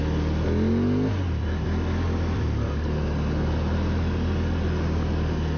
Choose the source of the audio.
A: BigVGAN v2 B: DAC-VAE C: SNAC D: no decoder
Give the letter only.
D